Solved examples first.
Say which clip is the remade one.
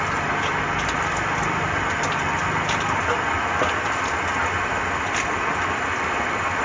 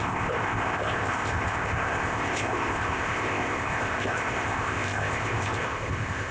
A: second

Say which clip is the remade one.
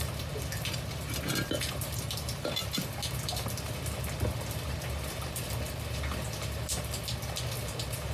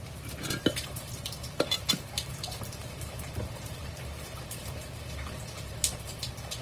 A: second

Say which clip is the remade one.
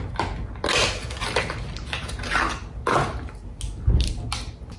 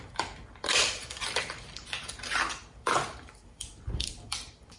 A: second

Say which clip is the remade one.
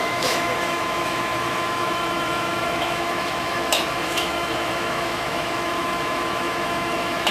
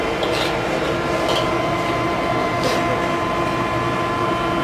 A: first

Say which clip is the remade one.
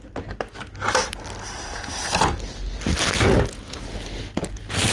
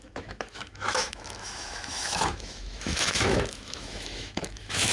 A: second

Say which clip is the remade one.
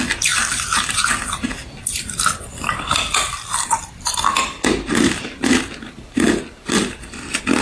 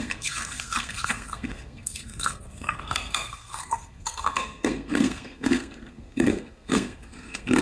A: second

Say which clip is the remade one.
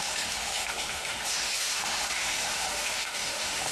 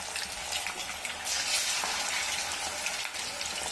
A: first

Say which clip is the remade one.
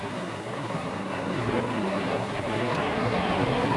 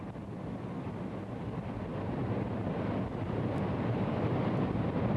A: first